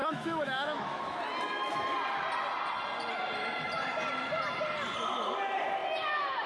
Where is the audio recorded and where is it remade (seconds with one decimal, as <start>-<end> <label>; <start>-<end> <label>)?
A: 0.0-1.2 remade; 1.2-6.5 recorded